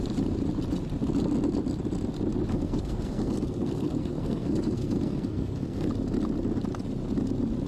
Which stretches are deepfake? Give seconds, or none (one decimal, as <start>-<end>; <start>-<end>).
2.5-5.9